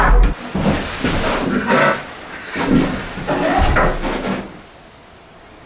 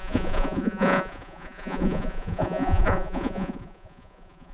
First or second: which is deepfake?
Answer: second